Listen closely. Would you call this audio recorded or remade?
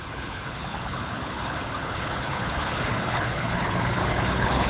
remade